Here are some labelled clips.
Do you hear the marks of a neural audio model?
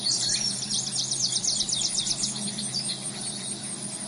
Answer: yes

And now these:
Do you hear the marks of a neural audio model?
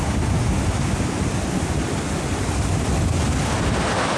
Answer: no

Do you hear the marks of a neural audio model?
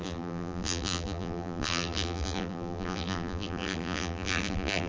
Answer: yes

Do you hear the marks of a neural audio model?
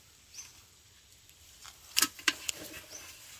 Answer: yes